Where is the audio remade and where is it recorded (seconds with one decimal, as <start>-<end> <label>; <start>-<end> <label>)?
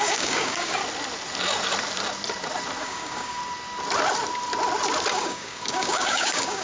0.0-0.8 remade; 0.8-2.8 recorded; 2.8-3.4 remade; 3.4-5.1 recorded; 5.1-6.6 remade